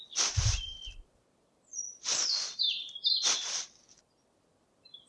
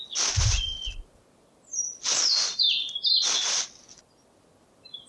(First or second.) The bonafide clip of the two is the second